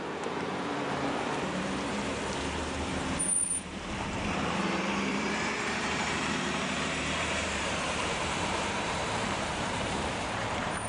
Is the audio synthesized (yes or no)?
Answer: yes